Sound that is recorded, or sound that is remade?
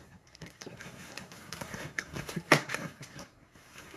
remade